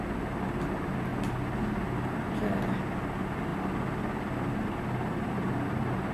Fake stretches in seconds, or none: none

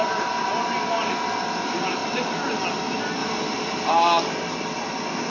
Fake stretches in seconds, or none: 2.0-2.6 (vocoder, BigVGAN v2); 3.2-3.9

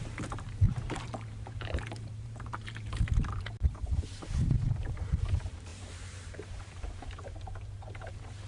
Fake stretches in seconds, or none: 0.0-8.5 (vocoder, BigVGAN v2)